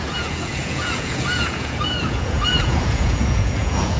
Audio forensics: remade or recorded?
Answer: remade